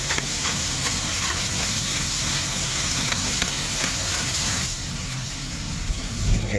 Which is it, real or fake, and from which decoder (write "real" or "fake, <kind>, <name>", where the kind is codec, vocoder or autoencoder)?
fake, codec, SNAC